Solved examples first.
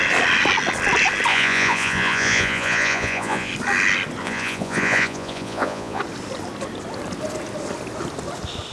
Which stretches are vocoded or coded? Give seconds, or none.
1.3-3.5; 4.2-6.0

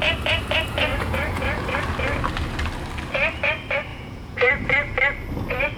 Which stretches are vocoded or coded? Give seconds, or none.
0.9-1.6; 3.9-4.5